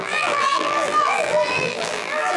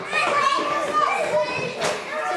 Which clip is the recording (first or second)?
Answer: second